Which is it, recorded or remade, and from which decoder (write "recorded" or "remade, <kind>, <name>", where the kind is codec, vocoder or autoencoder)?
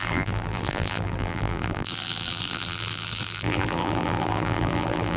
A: remade, vocoder, BigVGAN v2